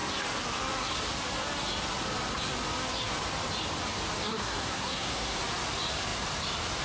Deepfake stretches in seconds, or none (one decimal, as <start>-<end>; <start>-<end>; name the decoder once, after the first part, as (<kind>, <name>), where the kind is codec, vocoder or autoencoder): 4.3-5.4 (codec, SNAC)